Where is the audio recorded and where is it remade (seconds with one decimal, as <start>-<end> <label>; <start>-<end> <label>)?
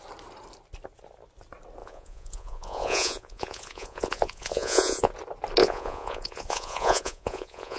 0.0-1.8 recorded; 1.8-5.1 remade; 5.1-5.6 recorded; 5.6-7.8 remade